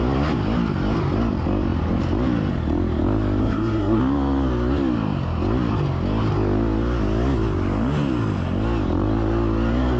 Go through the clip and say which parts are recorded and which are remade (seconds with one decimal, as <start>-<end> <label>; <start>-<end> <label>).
0.0-3.4 recorded; 3.4-4.0 remade; 4.0-10.0 recorded

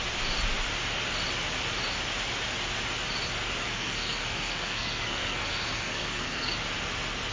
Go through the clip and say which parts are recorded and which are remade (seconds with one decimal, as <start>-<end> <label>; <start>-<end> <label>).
0.0-3.6 recorded; 3.6-6.5 remade; 6.5-7.3 recorded

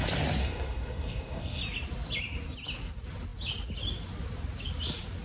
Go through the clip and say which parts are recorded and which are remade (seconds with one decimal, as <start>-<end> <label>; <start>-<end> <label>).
0.0-0.4 recorded; 0.4-1.6 remade; 1.6-5.2 recorded